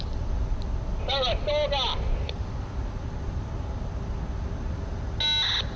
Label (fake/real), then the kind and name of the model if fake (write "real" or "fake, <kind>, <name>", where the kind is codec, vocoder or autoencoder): real